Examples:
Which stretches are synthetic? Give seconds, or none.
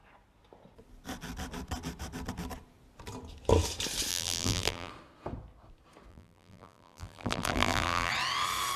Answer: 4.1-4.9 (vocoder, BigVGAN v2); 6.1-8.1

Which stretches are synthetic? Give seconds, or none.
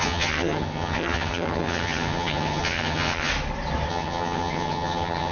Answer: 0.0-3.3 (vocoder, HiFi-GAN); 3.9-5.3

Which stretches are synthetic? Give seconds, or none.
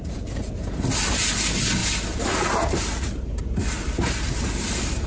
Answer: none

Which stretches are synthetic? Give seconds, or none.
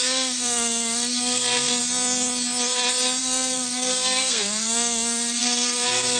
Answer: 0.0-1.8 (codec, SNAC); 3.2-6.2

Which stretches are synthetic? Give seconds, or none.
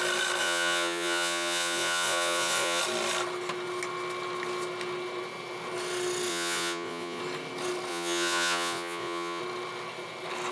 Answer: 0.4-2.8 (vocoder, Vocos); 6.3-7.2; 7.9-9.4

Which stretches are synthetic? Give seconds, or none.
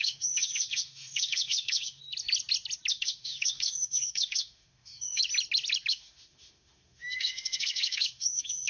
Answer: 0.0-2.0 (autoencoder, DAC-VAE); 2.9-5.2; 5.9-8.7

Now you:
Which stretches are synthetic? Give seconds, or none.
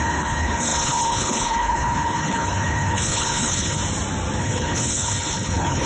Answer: 0.0-3.8 (codec, HILCodec); 4.4-5.9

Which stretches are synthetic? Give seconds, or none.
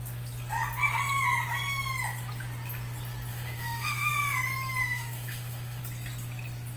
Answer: 3.3-4.1 (autoencoder, DAC-VAE); 4.8-5.8